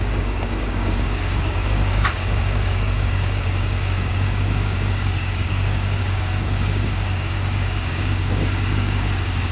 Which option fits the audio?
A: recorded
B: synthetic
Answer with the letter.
B